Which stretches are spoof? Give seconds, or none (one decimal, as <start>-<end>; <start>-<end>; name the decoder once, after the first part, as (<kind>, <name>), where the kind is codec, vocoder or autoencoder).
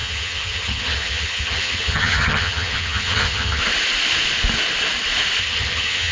0.0-3.6 (vocoder, HiFi-GAN); 5.4-6.1